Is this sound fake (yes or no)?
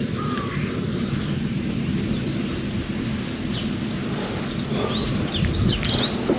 no